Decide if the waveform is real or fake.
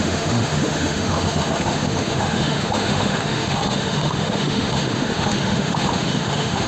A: fake